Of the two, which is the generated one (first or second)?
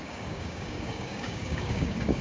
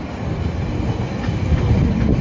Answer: first